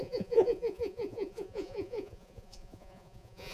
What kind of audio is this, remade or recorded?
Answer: remade